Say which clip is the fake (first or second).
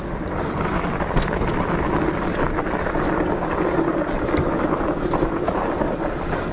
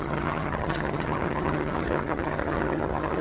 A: second